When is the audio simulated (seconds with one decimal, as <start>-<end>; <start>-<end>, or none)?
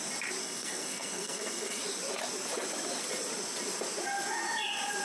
0.4-1.8